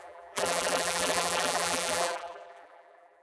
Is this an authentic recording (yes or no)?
no